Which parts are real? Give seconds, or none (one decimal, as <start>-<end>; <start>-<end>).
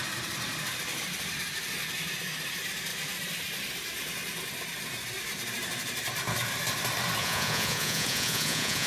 0.0-7.2